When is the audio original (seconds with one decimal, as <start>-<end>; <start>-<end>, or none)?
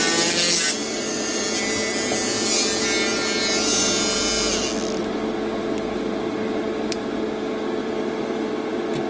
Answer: 0.0-0.8; 1.4-7.8; 8.5-9.1